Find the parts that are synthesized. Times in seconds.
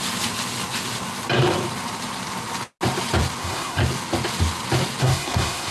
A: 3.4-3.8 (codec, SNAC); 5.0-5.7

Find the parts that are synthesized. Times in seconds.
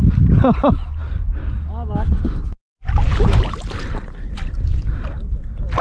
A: none